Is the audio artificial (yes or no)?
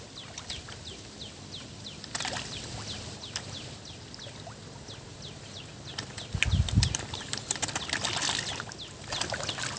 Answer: no